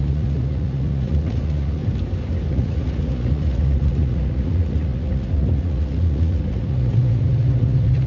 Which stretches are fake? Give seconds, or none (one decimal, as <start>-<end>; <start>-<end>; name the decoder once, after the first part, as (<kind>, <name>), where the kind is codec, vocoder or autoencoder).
0.0-1.8 (vocoder, Vocos); 2.5-8.1